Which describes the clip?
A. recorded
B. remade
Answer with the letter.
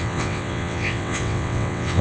B